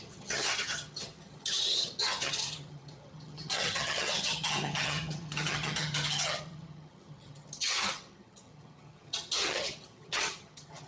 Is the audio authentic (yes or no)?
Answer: no